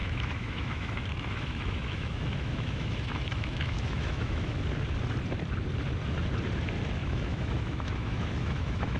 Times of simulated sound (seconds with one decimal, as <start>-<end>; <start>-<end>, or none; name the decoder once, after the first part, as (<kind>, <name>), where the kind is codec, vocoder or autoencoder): 0.0-4.6 (autoencoder, DAC-VAE); 7.0-9.0